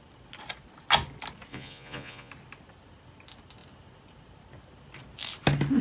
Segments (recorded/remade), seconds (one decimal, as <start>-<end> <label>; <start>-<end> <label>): 0.0-1.5 recorded; 1.5-2.3 remade; 2.3-5.8 recorded

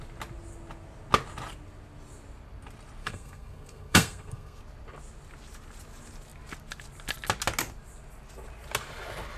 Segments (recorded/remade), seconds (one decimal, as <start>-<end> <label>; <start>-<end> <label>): 0.0-3.0 recorded; 3.0-4.6 remade; 4.6-9.4 recorded

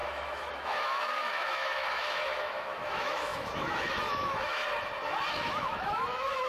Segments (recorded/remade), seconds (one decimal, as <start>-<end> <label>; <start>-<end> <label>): 0.0-4.6 remade; 4.6-5.3 recorded; 5.3-6.5 remade

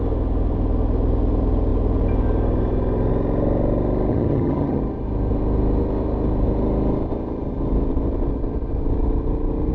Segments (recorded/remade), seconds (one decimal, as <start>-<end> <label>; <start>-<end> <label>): 0.0-4.1 recorded; 4.1-4.8 remade; 4.8-9.7 recorded

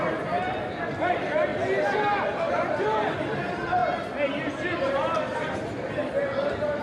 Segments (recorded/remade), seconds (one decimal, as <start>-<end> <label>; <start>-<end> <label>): 0.0-1.5 remade; 1.5-2.4 recorded; 2.4-3.8 remade; 3.8-4.6 recorded; 4.6-6.0 remade; 6.0-6.8 recorded

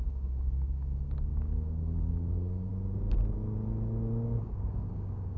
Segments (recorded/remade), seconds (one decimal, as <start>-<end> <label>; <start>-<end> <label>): 0.0-2.7 remade; 2.7-4.4 recorded; 4.4-5.4 remade